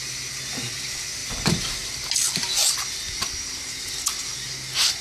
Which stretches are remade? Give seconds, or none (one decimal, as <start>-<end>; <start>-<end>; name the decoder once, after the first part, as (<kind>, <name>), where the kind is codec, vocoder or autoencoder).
none